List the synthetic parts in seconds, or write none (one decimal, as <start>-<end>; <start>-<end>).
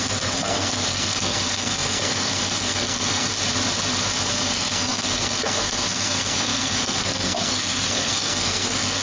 0.0-3.3; 4.3-9.0